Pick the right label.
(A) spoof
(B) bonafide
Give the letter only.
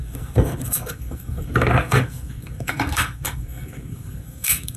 A